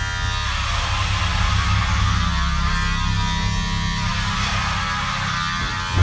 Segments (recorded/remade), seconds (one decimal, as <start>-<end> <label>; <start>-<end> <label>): 0.0-6.0 recorded